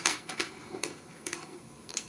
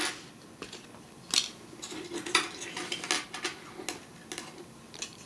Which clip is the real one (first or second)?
second